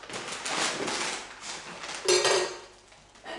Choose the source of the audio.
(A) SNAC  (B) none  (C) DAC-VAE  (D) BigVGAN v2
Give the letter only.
B